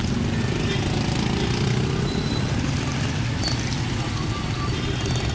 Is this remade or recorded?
recorded